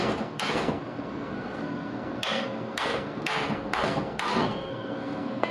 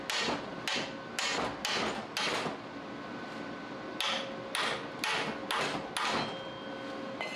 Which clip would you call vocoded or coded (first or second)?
first